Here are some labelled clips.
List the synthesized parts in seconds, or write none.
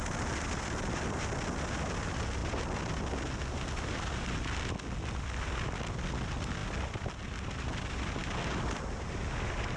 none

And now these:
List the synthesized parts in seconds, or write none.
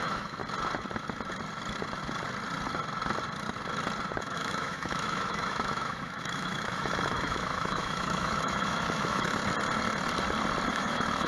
0.0-0.4 (autoencoder, DAC-VAE); 4.2-9.4; 10.7-11.3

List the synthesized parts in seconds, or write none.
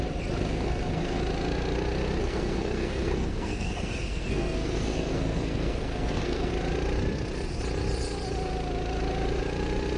0.5-1.2 (codec, SNAC); 2.2-6.5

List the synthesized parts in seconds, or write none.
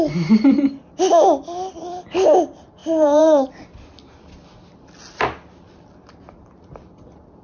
2.8-3.5 (vocoder, BigVGAN v2)